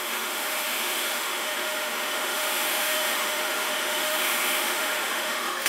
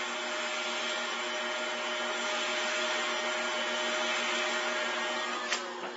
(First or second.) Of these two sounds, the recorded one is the second